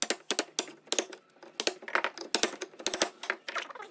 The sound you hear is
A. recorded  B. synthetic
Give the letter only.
A